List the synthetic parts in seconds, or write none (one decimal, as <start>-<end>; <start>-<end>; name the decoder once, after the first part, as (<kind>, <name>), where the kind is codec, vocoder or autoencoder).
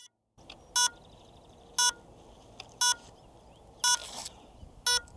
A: none